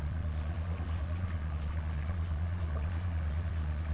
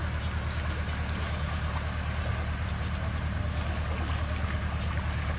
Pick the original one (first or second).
second